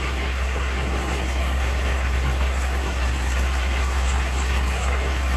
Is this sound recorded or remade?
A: remade